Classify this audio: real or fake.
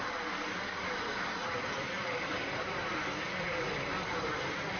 real